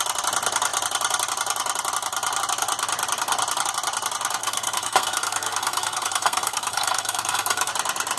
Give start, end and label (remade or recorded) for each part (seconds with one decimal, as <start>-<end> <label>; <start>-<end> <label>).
0.0-4.4 recorded; 4.4-7.7 remade; 7.7-8.2 recorded